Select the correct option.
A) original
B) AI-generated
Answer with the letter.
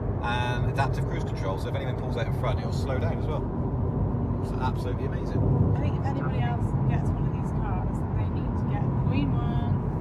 A